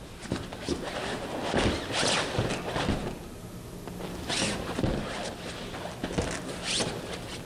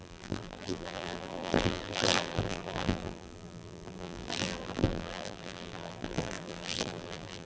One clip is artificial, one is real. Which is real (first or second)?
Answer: first